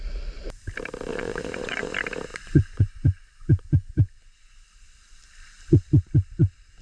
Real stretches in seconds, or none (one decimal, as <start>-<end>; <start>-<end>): 0.0-1.1; 1.9-2.3; 4.6-6.8

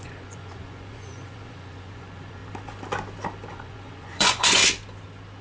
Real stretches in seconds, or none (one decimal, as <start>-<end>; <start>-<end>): 2.4-3.5; 4.6-5.4

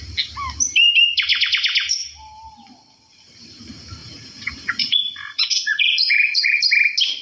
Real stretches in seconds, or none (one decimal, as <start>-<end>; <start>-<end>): 0.0-4.0; 6.6-7.2

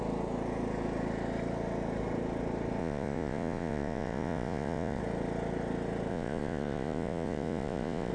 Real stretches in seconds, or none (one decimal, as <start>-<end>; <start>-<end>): 0.0-2.8; 5.0-6.1

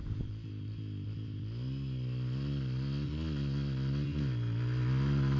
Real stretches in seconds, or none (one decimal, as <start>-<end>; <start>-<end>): 0.0-5.4

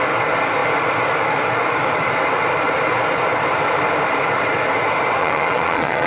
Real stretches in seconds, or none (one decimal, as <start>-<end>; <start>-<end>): 0.0-5.2